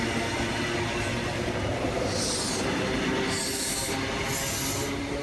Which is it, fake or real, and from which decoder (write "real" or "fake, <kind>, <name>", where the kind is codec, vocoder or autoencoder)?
real